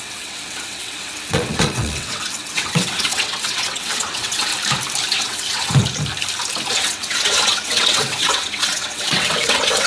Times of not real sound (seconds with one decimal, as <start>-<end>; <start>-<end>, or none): 0.0-4.5; 5.1-5.8; 6.7-9.9